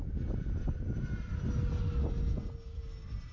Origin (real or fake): real